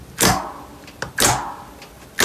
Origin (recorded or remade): recorded